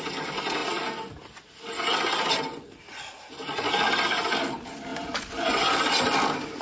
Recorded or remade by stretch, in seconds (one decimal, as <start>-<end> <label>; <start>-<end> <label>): 0.0-4.9 recorded; 4.9-5.5 remade; 5.5-6.6 recorded